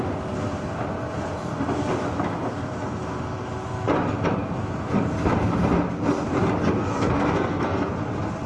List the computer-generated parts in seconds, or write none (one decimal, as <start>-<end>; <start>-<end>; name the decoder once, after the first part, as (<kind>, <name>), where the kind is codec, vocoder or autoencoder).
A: 6.8-7.9 (codec, SNAC)